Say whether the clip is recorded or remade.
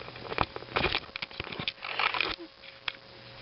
recorded